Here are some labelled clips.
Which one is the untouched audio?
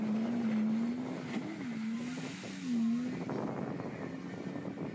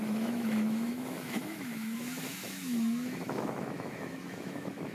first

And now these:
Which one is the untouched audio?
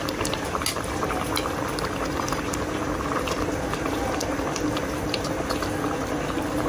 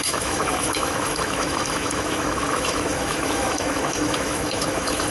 first